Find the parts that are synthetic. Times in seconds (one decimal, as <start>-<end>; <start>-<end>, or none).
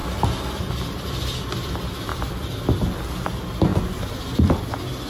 0.0-1.7; 2.1-3.0